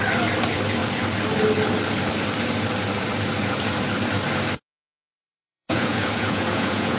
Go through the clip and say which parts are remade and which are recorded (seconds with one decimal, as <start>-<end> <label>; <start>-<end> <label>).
0.0-5.1 recorded; 5.1-7.0 remade